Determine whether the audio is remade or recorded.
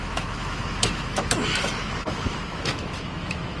remade